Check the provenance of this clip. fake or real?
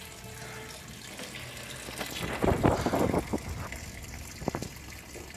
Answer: real